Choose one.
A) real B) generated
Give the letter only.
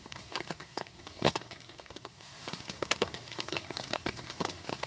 B